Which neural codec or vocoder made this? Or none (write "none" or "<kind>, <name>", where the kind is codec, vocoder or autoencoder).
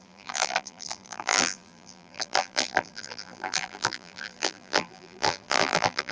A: vocoder, BigVGAN v2